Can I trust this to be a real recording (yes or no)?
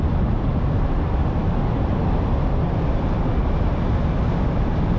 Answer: yes